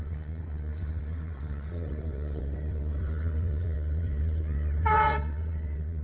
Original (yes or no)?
no